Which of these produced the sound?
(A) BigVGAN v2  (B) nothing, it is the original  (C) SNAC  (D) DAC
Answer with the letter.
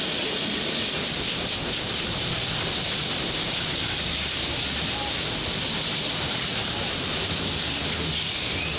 B